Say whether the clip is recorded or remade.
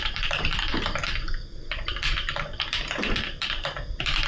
remade